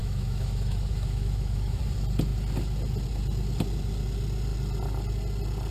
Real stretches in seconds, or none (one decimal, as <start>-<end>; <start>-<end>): 1.8-5.7